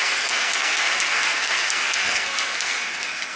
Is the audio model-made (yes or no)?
yes